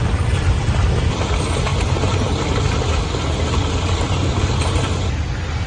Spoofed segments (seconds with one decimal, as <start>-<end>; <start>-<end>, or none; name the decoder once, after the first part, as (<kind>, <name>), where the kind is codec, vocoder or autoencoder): none